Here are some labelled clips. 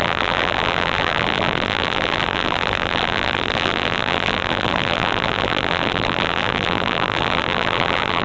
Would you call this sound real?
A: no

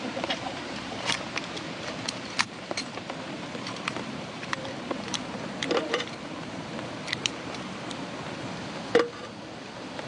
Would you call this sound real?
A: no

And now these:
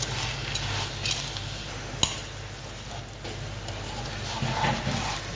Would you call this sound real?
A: yes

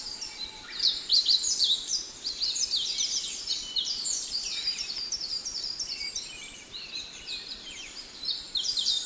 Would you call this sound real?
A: no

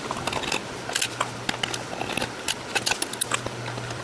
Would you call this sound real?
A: yes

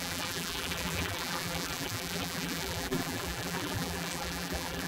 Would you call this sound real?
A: no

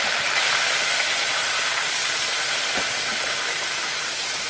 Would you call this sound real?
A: yes